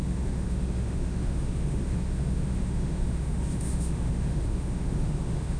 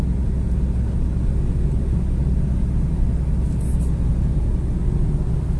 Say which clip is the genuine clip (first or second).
second